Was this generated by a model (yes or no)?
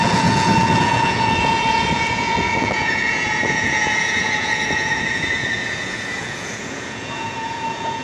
yes